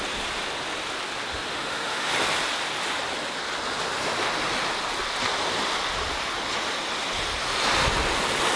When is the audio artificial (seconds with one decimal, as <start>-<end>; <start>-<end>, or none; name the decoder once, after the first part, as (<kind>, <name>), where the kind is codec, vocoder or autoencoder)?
1.5-2.1 (autoencoder, DAC-VAE)